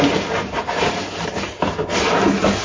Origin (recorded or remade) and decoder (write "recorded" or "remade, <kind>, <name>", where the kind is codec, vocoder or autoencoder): recorded